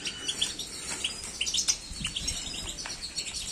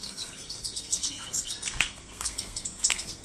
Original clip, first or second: first